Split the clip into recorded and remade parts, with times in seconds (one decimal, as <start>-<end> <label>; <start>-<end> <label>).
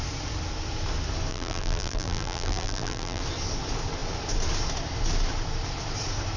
0.0-1.3 recorded; 1.3-3.2 remade; 3.2-6.4 recorded